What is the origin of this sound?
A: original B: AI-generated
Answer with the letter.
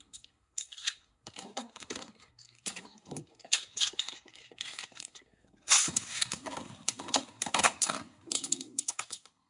B